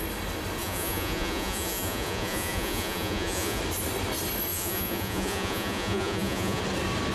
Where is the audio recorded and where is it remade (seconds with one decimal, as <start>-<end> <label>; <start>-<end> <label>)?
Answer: 0.0-0.6 recorded; 0.6-3.6 remade; 3.6-4.5 recorded; 4.5-6.6 remade; 6.6-7.1 recorded